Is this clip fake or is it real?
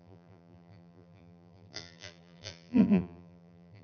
fake